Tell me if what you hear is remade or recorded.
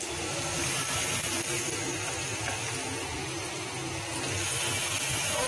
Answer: recorded